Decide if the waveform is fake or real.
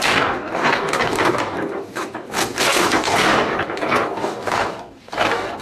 fake